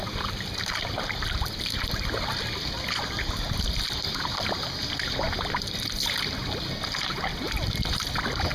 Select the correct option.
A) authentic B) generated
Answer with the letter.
A